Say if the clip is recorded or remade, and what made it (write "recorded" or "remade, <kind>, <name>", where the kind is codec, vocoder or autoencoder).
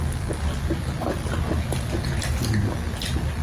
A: recorded